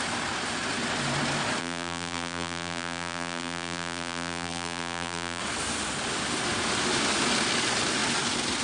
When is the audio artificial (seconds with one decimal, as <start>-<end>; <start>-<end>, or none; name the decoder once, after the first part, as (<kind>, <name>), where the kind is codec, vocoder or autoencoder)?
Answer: 1.6-5.4 (vocoder, BigVGAN v2)